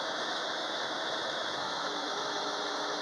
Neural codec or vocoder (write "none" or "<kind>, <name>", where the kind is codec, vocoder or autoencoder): autoencoder, DAC-VAE